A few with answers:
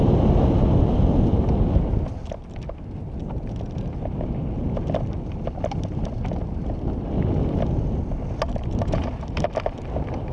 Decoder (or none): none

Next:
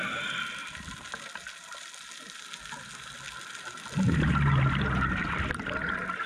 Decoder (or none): none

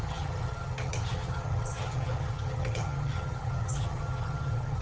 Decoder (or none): vocoder, HiFi-GAN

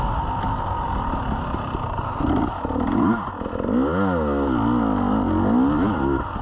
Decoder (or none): none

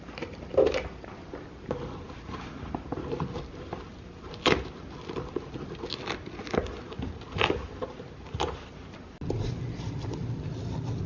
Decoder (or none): none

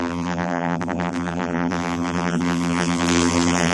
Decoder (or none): vocoder, BigVGAN v2